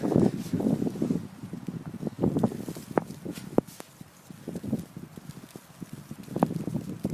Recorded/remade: recorded